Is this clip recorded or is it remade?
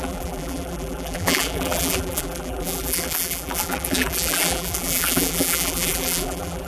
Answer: remade